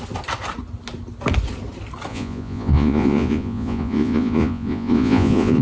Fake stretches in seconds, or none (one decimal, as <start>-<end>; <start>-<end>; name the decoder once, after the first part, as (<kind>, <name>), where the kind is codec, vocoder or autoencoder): 2.1-5.6 (vocoder, Vocos)

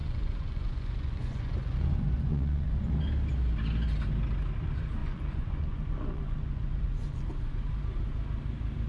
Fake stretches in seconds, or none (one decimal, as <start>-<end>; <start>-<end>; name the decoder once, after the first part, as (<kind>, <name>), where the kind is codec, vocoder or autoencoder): 0.0-2.9 (vocoder, Vocos); 5.0-7.3

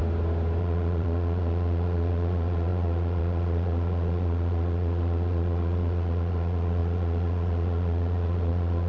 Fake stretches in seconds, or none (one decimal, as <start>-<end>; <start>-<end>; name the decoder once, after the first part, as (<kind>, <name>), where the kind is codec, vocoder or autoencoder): 0.6-8.9 (vocoder, Vocos)

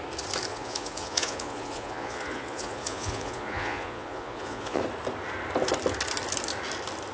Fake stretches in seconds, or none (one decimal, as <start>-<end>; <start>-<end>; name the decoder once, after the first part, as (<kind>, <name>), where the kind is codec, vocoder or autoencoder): 0.5-4.8 (vocoder, Vocos)